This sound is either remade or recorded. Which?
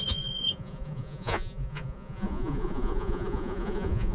remade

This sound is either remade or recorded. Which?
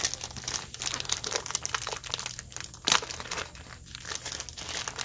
recorded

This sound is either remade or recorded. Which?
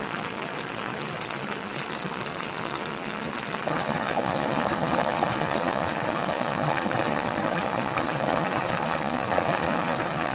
remade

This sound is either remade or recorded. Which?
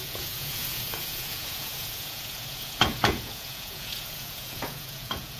remade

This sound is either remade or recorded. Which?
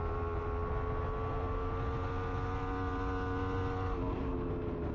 recorded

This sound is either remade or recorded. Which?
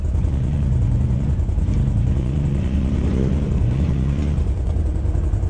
remade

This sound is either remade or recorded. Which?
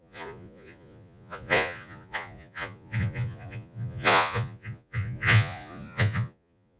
remade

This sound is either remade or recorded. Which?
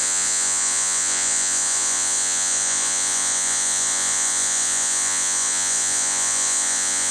remade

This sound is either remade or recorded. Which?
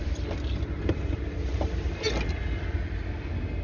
recorded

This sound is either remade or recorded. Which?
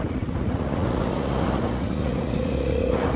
remade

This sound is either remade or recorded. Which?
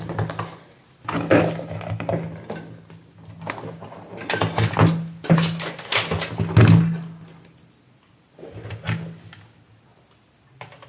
recorded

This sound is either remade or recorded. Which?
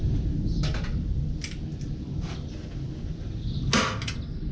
recorded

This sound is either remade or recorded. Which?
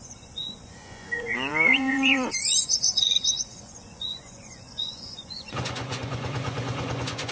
remade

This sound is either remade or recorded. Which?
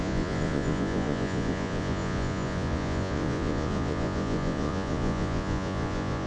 remade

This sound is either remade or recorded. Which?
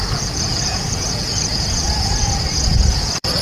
remade